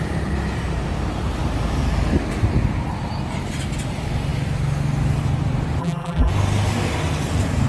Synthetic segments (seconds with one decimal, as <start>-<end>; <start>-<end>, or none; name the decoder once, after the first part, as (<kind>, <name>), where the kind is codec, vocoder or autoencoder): 5.8-6.3 (vocoder, BigVGAN v2)